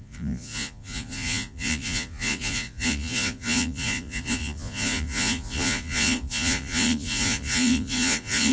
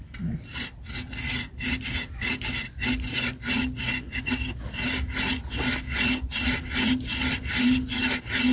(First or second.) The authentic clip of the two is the second